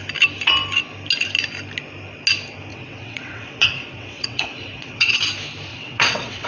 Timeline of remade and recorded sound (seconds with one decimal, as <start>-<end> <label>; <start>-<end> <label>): 0.0-2.7 recorded; 2.7-5.2 remade; 5.2-5.7 recorded; 5.7-6.5 remade